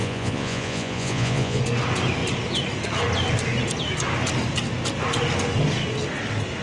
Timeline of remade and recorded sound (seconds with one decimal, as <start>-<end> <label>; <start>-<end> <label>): 0.0-1.6 remade; 1.6-6.6 recorded